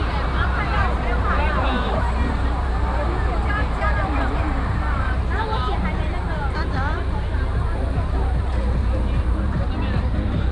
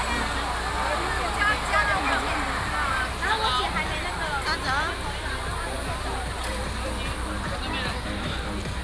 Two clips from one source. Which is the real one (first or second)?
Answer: second